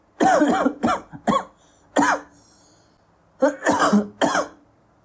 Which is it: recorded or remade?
recorded